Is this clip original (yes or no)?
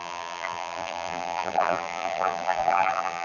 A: no